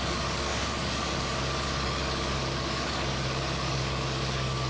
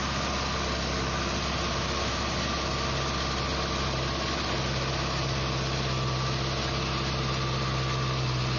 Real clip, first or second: second